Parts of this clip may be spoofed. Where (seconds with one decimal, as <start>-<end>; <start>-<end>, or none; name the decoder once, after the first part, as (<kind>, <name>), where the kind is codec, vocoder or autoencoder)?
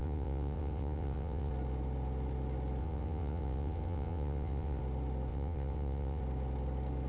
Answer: 0.0-1.5 (vocoder, WaveNeXt); 2.8-4.8; 5.3-6.2